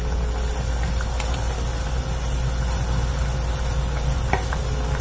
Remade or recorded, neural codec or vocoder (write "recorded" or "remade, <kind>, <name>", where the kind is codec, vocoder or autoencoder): recorded